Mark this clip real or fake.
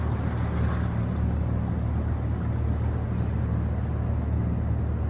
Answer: real